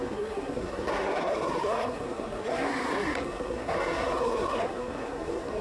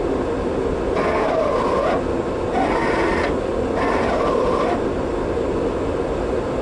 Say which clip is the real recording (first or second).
second